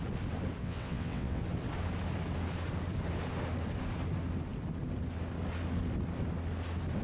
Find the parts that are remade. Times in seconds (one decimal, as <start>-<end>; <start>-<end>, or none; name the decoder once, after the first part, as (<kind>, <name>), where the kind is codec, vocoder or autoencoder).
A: 0.6-1.4 (vocoder, WaveNeXt)